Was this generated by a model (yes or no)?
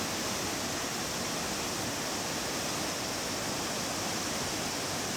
no